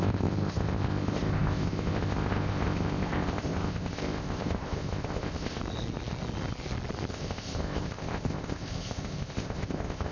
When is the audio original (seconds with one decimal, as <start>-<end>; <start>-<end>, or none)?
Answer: 5.6-7.1